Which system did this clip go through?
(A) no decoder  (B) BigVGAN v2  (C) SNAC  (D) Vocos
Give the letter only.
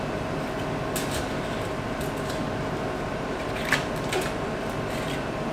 A